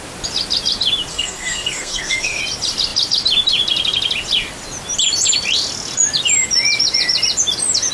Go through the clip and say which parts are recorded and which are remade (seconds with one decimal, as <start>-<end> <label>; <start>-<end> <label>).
0.0-1.1 recorded; 1.1-2.4 remade; 2.4-7.9 recorded